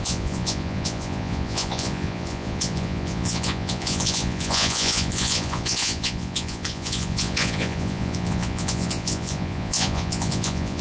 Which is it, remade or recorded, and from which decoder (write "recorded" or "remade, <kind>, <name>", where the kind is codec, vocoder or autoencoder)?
remade, vocoder, Vocos